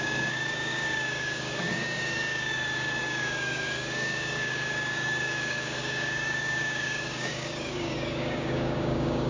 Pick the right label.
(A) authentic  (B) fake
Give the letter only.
B